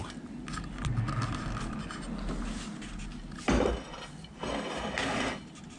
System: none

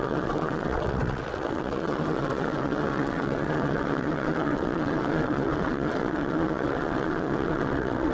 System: vocoder, WaveNeXt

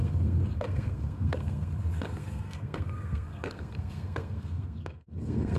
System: codec, SNAC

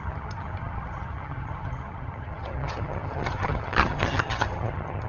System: vocoder, HiFi-GAN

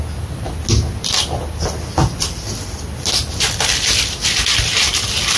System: none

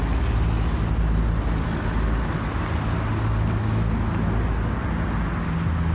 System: none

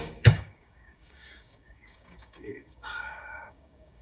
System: codec, DAC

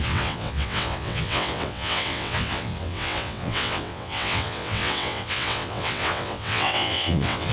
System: vocoder, WaveNeXt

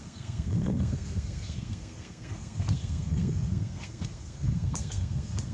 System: codec, SNAC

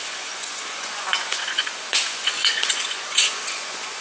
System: vocoder, Vocos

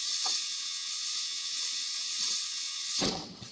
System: vocoder, WaveNeXt